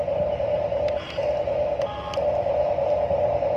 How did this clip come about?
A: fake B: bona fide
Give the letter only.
B